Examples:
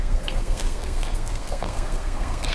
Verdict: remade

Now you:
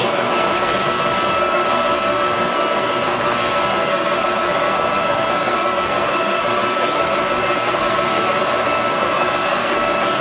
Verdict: remade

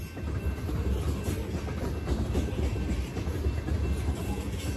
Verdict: recorded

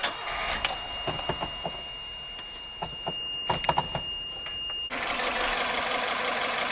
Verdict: recorded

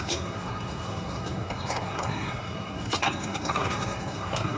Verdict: remade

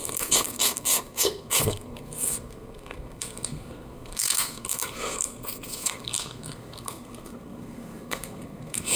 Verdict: remade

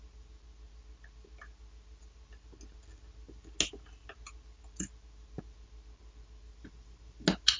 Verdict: recorded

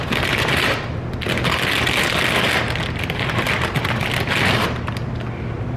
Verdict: recorded